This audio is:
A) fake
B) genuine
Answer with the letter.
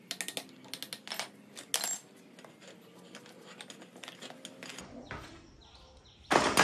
B